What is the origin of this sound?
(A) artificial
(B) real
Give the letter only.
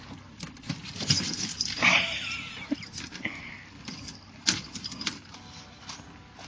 B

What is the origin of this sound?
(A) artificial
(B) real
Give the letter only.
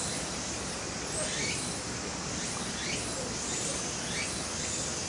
B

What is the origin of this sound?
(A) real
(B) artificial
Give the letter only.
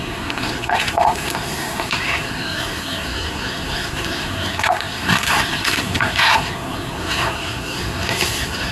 B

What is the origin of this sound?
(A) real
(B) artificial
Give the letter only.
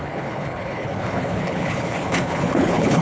B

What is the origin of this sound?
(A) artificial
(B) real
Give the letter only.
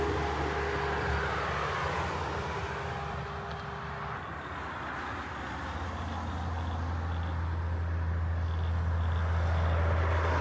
B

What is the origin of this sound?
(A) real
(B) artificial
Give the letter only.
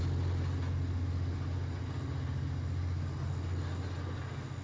A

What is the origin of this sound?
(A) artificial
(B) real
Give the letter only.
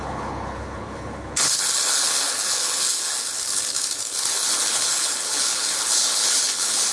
A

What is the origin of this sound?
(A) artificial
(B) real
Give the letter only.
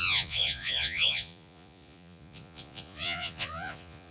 A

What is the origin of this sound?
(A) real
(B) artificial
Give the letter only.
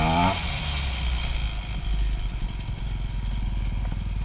A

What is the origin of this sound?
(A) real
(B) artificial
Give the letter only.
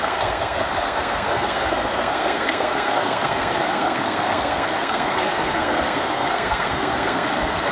B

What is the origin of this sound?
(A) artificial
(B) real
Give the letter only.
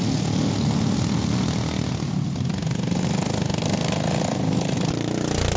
B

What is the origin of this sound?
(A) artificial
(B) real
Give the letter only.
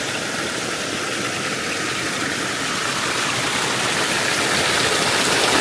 B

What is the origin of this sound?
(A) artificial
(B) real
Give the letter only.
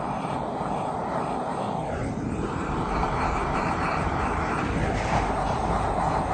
A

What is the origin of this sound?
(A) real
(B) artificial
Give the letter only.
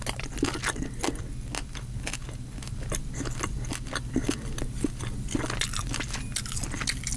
A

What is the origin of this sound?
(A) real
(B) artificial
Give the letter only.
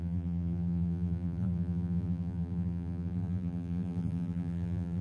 B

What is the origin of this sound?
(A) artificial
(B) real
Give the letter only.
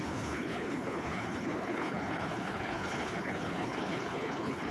A